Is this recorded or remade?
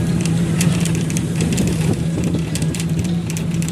remade